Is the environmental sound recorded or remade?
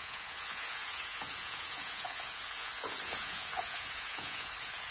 remade